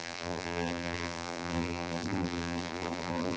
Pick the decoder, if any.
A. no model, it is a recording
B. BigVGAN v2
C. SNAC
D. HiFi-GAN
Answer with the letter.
B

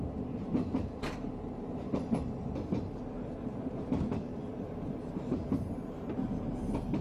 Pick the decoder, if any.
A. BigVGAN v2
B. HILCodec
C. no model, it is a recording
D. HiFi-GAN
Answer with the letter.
A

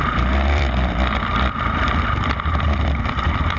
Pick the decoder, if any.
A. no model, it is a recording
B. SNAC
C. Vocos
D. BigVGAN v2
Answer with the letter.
D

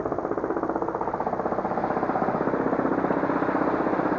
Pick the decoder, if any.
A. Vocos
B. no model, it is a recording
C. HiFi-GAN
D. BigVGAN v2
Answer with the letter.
B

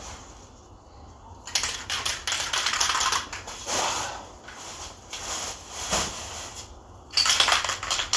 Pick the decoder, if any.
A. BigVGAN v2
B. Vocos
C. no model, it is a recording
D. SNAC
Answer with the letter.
C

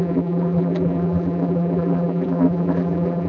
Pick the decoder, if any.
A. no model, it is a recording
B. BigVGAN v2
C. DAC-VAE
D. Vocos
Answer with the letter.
B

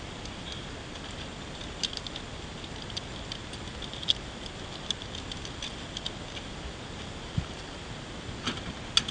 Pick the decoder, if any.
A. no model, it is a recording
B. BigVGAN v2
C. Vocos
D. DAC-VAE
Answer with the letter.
A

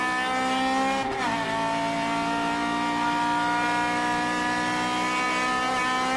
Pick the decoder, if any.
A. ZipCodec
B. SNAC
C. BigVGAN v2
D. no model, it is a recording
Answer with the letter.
D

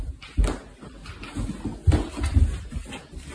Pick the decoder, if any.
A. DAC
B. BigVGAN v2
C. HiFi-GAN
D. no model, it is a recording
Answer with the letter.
D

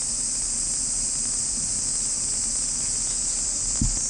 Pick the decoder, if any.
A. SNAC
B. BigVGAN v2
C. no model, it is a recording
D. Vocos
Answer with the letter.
C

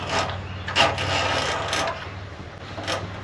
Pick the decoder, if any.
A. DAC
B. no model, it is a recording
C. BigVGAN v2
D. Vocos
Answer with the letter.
B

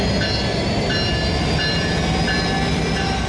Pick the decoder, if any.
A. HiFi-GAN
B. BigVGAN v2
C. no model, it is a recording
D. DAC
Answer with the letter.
C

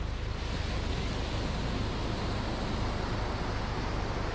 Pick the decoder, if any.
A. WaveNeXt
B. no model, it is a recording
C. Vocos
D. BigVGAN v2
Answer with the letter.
B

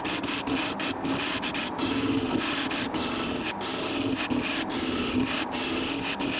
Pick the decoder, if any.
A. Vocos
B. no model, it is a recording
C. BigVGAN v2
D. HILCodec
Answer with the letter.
B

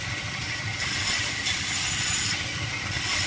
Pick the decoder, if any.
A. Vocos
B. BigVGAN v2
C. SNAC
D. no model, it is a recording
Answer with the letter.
D